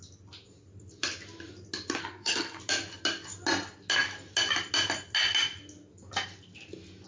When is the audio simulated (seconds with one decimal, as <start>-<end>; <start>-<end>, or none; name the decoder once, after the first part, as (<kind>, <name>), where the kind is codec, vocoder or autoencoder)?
2.0-2.6 (codec, SNAC)

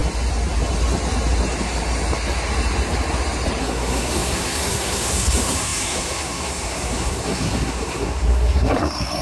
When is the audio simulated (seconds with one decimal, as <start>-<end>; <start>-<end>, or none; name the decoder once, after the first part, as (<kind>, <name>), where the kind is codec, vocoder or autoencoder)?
3.6-9.2 (codec, SNAC)

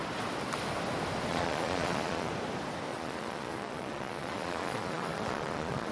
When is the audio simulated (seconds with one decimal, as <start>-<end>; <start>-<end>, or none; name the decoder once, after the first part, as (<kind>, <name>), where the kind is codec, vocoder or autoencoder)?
1.3-2.3 (vocoder, Vocos); 2.9-5.9

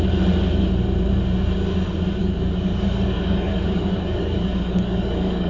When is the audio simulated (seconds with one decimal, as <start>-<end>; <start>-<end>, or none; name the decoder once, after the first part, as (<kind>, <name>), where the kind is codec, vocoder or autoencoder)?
2.2-5.5 (codec, DAC)

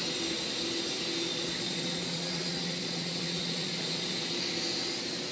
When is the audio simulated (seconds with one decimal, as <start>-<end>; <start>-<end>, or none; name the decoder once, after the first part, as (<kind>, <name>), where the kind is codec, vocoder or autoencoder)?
1.3-4.5 (vocoder, Vocos)